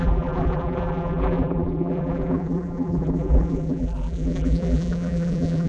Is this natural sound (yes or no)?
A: no